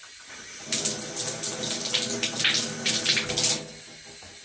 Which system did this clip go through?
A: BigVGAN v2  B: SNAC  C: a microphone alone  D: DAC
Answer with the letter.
C